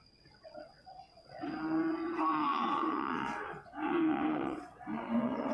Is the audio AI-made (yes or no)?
yes